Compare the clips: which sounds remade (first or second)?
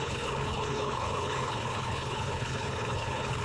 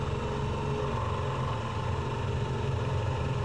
first